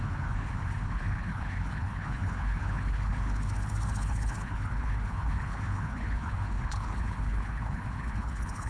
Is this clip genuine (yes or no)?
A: no